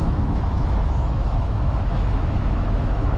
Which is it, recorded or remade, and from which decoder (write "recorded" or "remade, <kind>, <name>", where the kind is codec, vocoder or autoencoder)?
remade, autoencoder, DAC-VAE